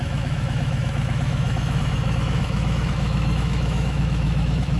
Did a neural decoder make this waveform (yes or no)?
yes